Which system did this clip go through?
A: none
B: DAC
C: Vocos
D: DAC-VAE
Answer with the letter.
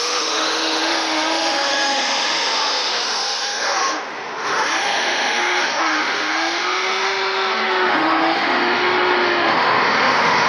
D